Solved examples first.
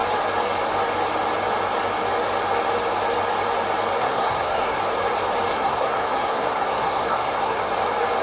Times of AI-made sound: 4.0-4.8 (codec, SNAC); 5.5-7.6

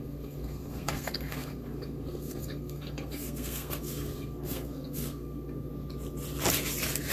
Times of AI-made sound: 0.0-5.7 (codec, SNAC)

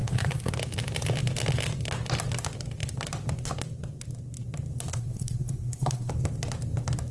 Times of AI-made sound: 0.0-0.5 (codec, SNAC); 4.9-6.1

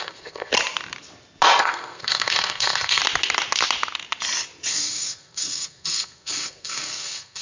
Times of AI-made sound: 0.0-0.5 (codec, SNAC); 1.6-3.0; 4.7-7.4

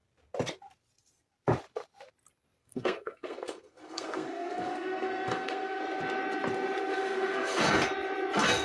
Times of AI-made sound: 2.6-5.8 (codec, SNAC); 6.9-7.6